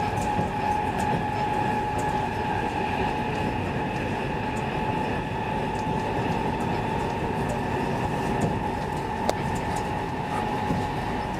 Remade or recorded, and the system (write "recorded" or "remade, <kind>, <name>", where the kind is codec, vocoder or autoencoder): recorded